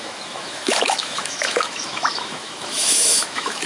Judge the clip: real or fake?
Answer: fake